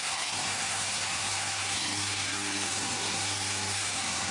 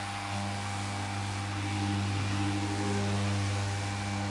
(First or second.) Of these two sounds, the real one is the second